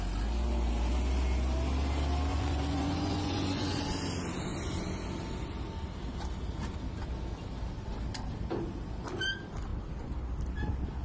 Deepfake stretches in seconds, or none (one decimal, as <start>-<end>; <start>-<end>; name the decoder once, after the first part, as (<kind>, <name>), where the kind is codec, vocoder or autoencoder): 2.3-3.8 (vocoder, Vocos)